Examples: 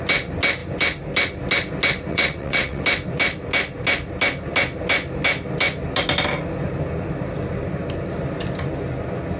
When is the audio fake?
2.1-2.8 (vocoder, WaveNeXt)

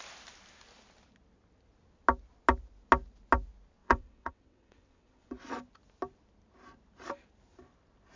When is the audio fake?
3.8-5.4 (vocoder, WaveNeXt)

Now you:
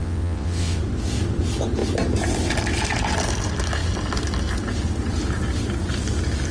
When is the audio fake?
0.0-0.8 (vocoder, WaveNeXt)

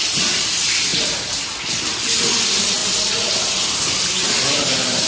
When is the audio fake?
none